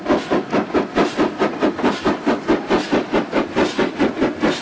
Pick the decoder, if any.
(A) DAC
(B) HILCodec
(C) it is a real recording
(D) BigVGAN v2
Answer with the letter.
C